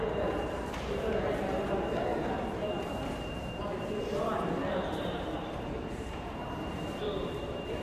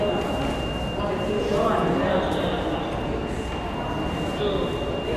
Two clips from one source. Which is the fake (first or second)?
first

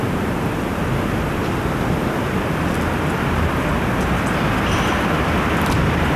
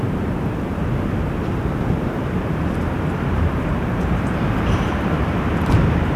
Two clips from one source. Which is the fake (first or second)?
second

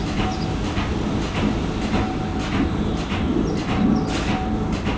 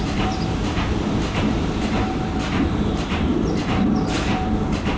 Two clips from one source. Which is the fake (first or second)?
second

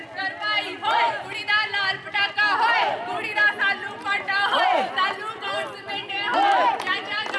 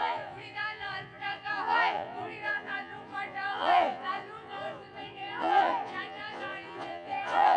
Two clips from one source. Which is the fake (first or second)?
second